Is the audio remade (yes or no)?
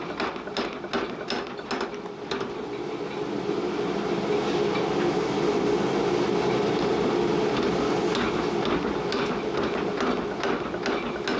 no